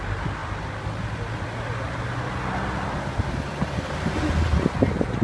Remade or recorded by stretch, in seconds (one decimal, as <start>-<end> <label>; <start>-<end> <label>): 0.0-5.2 recorded